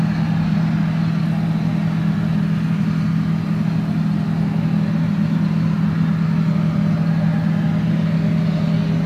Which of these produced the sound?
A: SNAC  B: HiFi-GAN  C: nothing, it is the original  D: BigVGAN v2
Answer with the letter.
C